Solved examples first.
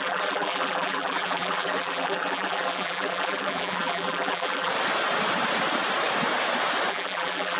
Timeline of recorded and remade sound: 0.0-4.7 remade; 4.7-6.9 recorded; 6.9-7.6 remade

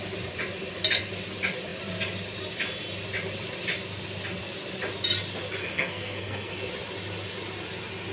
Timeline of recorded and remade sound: 0.0-5.6 recorded; 5.6-6.7 remade; 6.7-8.1 recorded

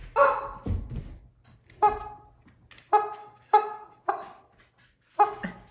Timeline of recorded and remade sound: 0.0-3.2 recorded; 3.2-4.0 remade; 4.0-5.7 recorded

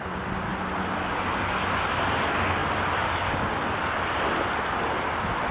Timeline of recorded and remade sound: 0.0-0.5 remade; 0.5-1.1 recorded; 1.1-5.5 remade

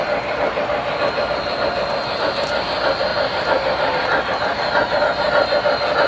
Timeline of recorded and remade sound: 0.0-3.1 recorded; 3.1-5.0 remade; 5.0-6.1 recorded

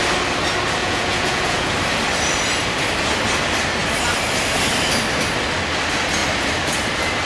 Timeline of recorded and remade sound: 0.0-0.8 recorded; 0.8-1.7 remade; 1.7-7.3 recorded

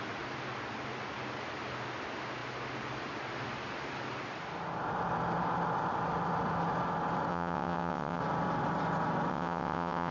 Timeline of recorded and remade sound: 0.0-7.3 recorded; 7.3-8.2 remade; 8.2-9.3 recorded; 9.3-10.1 remade

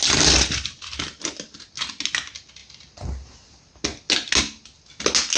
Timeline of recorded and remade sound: 0.0-5.4 recorded